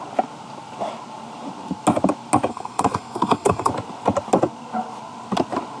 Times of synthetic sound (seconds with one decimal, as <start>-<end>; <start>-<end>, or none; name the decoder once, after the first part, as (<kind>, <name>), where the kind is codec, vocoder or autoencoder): 2.5-3.7 (codec, SNAC)